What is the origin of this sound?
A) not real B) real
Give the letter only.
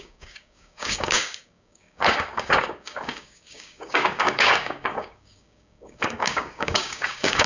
A